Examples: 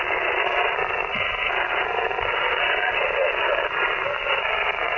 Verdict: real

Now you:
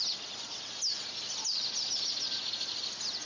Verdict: real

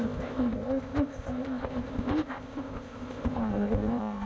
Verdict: fake